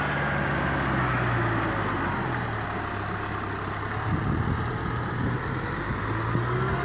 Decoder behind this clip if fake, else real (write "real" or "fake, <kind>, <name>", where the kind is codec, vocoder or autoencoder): real